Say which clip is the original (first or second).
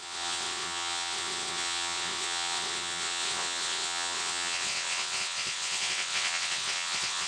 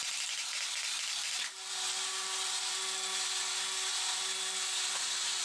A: second